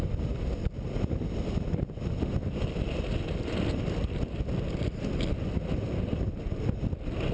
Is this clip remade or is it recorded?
recorded